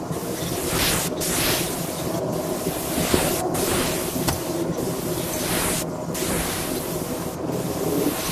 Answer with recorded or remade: recorded